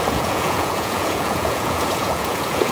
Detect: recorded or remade remade